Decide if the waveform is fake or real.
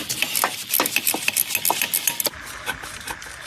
real